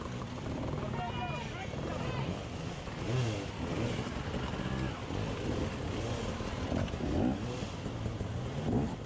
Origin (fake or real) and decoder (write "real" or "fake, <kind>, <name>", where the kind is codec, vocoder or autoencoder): real